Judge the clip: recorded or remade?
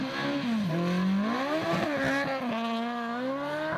recorded